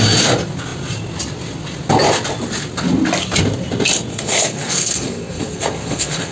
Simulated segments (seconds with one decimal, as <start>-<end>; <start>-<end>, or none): 4.1-6.3